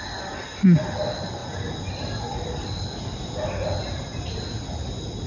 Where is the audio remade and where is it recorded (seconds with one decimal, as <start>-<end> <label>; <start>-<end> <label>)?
0.0-5.3 recorded